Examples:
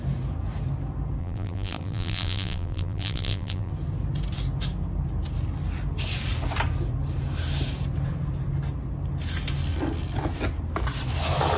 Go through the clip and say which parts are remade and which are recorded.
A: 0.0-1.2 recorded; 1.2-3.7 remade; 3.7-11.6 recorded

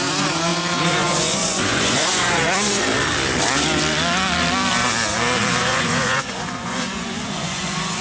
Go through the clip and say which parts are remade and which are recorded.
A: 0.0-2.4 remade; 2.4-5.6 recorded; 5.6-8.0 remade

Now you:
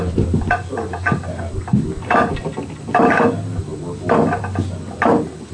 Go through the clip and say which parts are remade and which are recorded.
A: 0.0-3.7 remade; 3.7-4.4 recorded; 4.4-5.5 remade

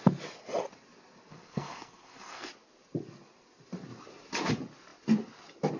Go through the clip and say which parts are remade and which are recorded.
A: 0.0-1.3 recorded; 1.3-2.5 remade; 2.5-5.8 recorded

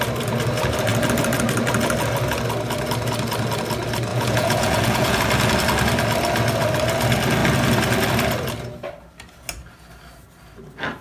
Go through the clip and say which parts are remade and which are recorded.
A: 0.0-4.1 recorded; 4.1-5.2 remade; 5.2-11.0 recorded

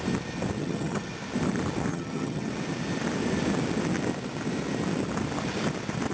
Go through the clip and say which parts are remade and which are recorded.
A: 0.0-0.6 recorded; 0.6-1.1 remade; 1.1-1.9 recorded; 1.9-2.5 remade; 2.5-6.1 recorded